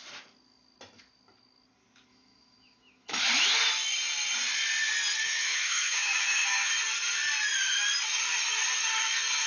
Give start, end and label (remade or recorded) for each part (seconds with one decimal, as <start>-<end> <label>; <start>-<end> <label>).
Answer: 0.0-2.1 recorded; 2.1-3.2 remade; 3.2-5.3 recorded; 5.3-6.7 remade; 6.7-9.5 recorded

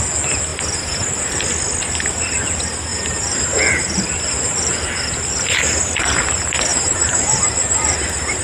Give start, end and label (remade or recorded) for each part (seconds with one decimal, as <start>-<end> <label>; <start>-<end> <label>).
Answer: 0.0-2.9 recorded; 2.9-6.2 remade; 6.2-6.7 recorded; 6.7-8.4 remade

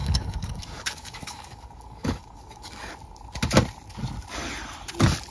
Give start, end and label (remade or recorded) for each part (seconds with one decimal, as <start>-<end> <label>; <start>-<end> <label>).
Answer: 0.0-2.9 remade; 2.9-5.3 recorded

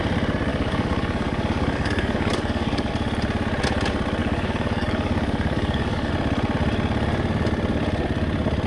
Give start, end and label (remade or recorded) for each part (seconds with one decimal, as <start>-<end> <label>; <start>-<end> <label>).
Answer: 0.0-0.5 recorded; 0.5-2.9 remade; 2.9-4.2 recorded; 4.2-6.1 remade; 6.1-8.7 recorded

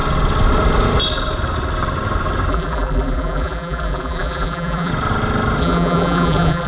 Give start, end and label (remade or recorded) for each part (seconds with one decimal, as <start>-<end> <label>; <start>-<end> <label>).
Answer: 0.0-2.5 recorded; 2.5-4.9 remade; 4.9-5.6 recorded; 5.6-6.7 remade

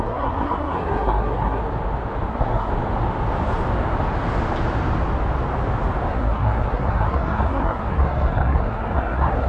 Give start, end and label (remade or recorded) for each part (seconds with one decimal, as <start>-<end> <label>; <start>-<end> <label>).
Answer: 0.0-1.6 remade; 1.6-2.3 recorded; 2.3-2.7 remade; 2.7-6.1 recorded; 6.1-9.5 remade

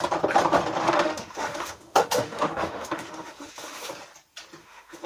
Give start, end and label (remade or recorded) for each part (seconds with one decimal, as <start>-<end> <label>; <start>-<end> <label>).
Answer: 0.0-0.8 recorded; 0.8-3.9 remade; 3.9-4.6 recorded; 4.6-5.1 remade

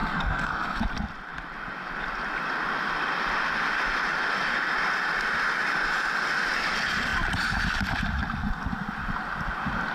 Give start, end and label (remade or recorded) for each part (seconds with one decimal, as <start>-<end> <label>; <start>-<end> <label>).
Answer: 0.0-0.8 remade; 0.8-9.9 recorded